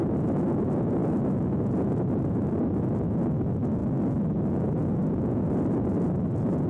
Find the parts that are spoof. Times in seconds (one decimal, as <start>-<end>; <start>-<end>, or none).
1.0-2.8; 3.8-6.7